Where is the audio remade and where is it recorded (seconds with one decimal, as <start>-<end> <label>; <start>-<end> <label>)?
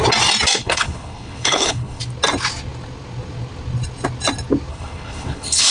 0.0-0.6 recorded; 0.6-2.0 remade; 2.0-4.7 recorded; 4.7-5.7 remade